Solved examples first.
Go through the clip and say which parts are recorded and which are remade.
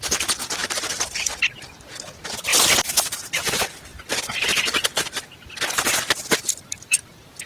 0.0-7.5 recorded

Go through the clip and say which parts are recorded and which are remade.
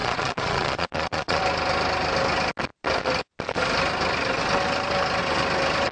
0.0-1.4 remade; 1.4-5.9 recorded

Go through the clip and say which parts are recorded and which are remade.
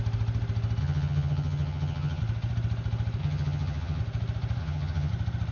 0.0-0.8 recorded; 0.8-2.2 remade; 2.2-3.2 recorded; 3.2-4.0 remade; 4.0-4.6 recorded; 4.6-5.1 remade; 5.1-5.5 recorded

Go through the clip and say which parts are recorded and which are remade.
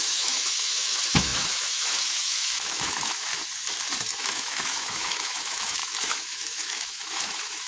0.0-3.3 remade; 3.3-4.2 recorded; 4.2-7.7 remade